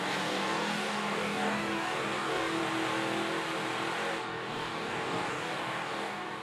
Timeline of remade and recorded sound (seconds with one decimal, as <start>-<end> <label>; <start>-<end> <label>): 0.0-2.6 remade; 2.6-4.2 recorded; 4.2-6.4 remade